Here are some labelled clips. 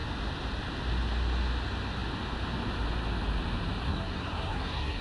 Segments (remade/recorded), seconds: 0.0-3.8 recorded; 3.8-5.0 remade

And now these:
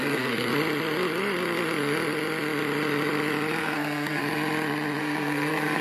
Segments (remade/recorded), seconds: 0.0-0.5 remade; 0.5-3.6 recorded; 3.6-4.2 remade; 4.2-5.0 recorded; 5.0-5.8 remade

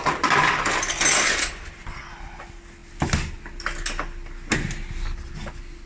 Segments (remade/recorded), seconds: 0.0-5.9 recorded

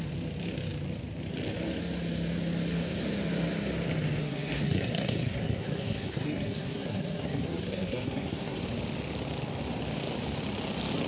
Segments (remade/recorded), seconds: 0.0-4.2 recorded; 4.2-8.6 remade; 8.6-11.1 recorded